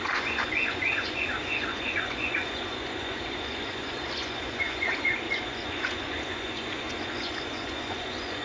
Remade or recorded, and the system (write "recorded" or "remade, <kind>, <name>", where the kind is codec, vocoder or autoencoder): remade, vocoder, Vocos